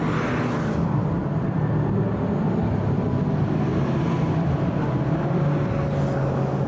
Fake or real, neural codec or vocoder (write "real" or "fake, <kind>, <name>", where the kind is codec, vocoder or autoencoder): real